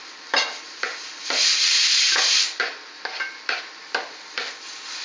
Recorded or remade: recorded